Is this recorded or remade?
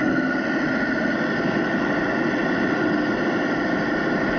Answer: recorded